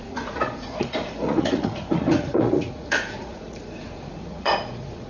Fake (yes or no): yes